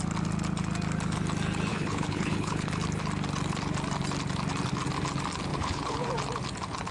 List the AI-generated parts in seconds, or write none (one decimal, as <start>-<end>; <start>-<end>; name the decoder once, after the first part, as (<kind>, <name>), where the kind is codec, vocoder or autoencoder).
1.7-2.7 (codec, HILCodec); 5.5-6.1